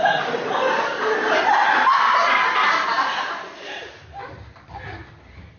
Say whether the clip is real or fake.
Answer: real